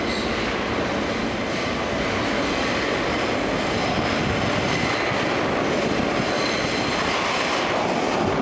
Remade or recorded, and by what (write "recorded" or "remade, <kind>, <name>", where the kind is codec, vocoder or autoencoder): recorded